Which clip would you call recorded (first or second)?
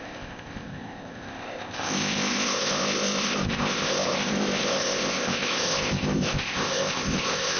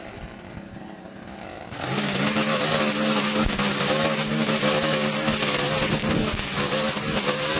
second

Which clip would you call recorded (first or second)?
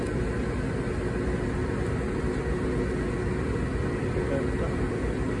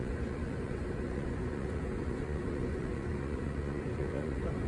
first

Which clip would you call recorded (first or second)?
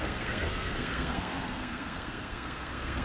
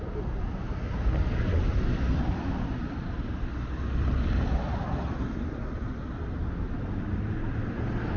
second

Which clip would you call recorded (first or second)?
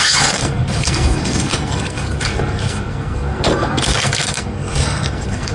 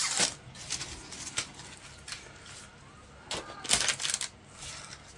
second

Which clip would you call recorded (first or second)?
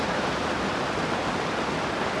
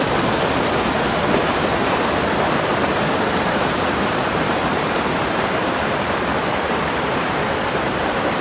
first